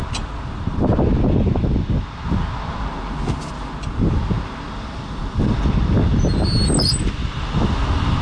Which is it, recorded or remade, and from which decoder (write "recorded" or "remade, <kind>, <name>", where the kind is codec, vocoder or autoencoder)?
recorded